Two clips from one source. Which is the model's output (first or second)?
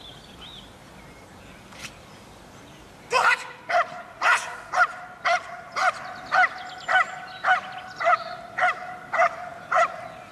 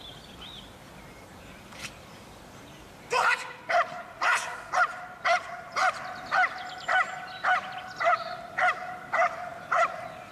second